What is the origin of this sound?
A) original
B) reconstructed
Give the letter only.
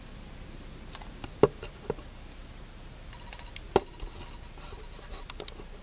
A